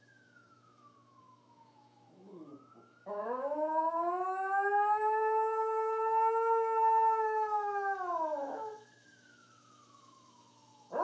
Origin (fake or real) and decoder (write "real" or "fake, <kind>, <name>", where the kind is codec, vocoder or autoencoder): fake, autoencoder, DAC-VAE